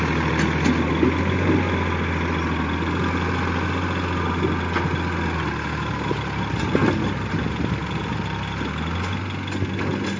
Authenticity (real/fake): real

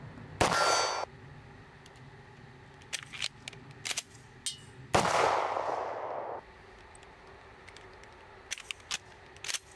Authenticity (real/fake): real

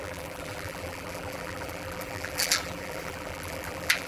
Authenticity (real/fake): fake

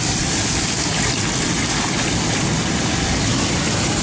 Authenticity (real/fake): real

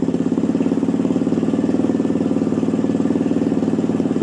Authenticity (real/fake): real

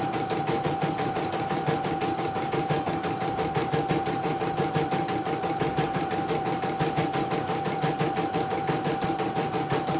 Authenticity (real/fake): real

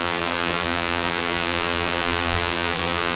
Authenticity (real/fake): fake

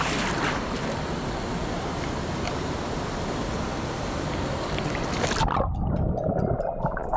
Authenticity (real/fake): real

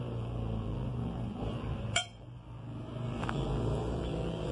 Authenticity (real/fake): fake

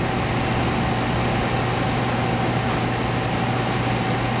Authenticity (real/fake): real